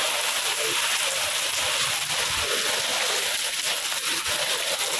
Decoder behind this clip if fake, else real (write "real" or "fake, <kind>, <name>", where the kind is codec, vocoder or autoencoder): real